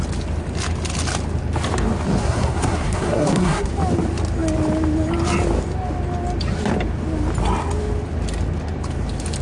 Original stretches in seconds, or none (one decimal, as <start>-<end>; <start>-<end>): 0.0-2.2; 3.7-9.4

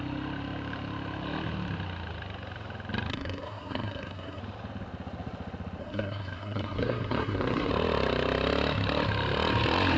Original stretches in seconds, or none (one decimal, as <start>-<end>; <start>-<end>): 0.0-3.1; 4.4-5.8; 7.7-10.0

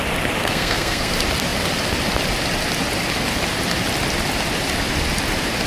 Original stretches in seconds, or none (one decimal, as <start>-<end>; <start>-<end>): 0.0-0.4; 1.1-5.7

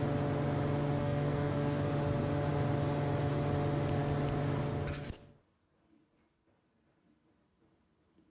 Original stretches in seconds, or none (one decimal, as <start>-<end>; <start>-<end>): 0.0-1.0; 1.9-8.3

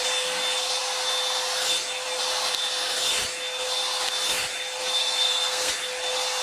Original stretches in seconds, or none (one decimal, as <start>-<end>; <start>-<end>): 0.0-5.0; 5.7-6.4

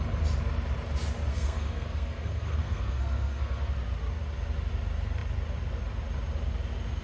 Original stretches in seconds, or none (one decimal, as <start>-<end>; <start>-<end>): 0.0-1.3; 3.7-7.0